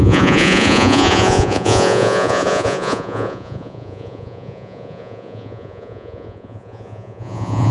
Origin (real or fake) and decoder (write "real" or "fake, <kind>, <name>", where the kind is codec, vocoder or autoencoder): fake, vocoder, Vocos